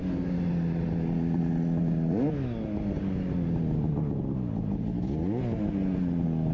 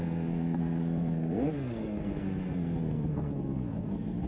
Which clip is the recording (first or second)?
first